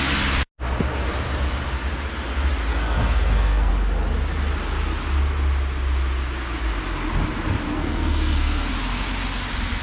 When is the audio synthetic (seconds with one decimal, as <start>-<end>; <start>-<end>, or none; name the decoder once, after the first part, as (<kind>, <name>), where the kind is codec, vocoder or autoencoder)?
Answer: 2.7-3.7 (codec, SNAC); 7.7-8.7